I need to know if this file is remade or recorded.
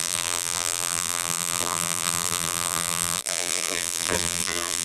remade